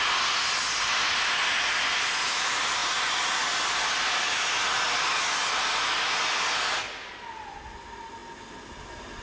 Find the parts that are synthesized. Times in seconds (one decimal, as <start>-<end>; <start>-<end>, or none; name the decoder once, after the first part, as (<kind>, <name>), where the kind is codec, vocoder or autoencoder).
none